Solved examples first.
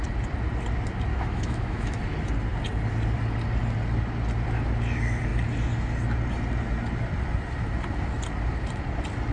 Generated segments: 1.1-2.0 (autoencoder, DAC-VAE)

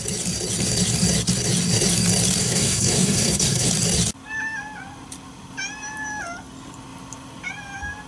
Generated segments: 2.4-3.7 (codec, SNAC)

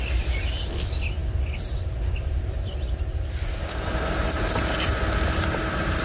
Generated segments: none

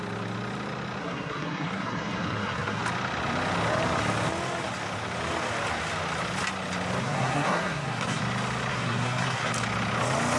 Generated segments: 1.0-2.8 (codec, SNAC); 7.0-8.2; 8.7-9.5

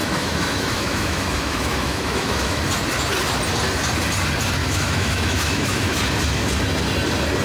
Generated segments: 0.0-2.6 (autoencoder, DAC-VAE); 4.6-6.0

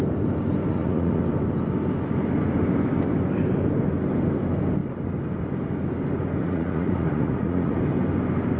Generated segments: 0.7-1.2 (vocoder, Vocos); 6.4-7.8